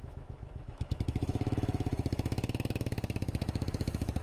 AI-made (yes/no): yes